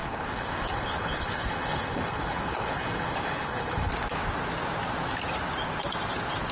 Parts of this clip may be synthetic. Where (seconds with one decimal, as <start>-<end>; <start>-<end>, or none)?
0.0-3.9